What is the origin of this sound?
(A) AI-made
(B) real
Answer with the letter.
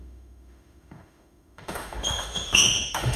A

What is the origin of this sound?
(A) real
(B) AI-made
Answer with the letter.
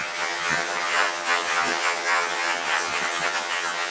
B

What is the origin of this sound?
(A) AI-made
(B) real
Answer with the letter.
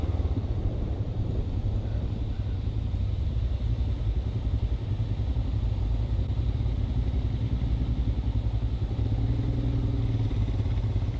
B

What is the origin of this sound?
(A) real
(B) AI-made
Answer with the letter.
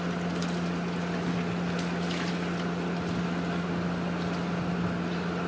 A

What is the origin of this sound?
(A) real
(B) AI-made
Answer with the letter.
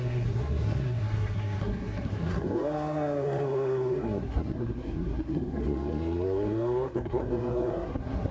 B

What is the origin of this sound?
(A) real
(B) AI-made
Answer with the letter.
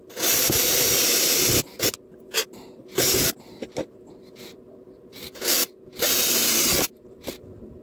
A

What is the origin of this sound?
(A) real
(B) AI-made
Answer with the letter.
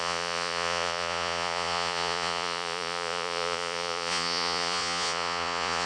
B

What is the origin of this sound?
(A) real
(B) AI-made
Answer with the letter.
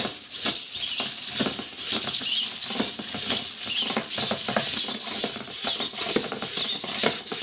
A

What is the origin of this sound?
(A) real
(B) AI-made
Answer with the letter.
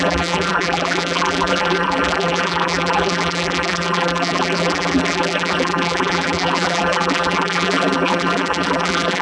B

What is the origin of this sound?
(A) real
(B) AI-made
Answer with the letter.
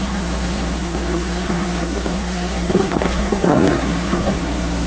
B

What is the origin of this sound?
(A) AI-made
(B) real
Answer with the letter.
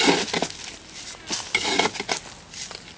B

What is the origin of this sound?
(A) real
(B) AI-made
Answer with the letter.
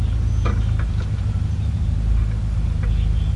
A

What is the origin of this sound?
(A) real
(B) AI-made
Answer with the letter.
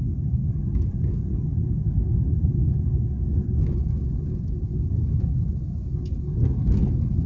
A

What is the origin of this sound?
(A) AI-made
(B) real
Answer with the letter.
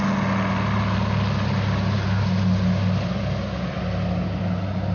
B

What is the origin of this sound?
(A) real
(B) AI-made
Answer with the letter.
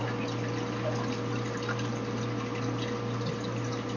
A